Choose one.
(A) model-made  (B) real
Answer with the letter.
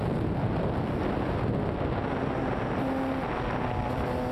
B